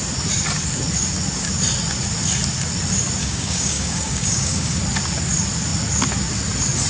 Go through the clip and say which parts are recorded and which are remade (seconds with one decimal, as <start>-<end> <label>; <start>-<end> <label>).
0.0-3.2 recorded; 3.2-4.8 remade; 4.8-6.9 recorded